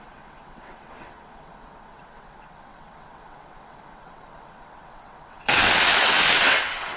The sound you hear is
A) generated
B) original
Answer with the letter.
A